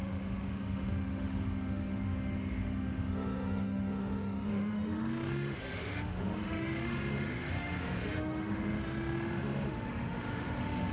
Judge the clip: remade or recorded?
remade